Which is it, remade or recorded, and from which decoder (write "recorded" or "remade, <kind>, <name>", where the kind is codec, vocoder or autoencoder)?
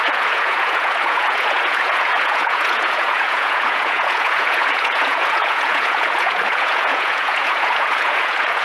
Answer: remade, vocoder, Vocos